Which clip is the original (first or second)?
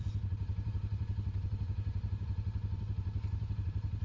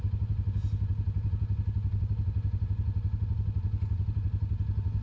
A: second